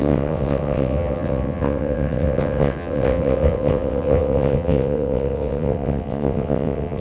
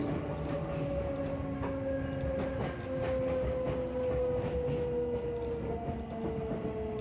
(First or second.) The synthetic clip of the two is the first